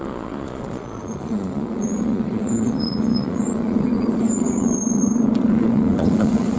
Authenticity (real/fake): fake